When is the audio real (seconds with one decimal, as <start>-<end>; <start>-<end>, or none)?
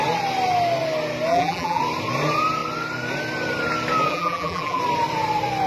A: 0.0-1.3; 1.8-4.1; 4.8-5.7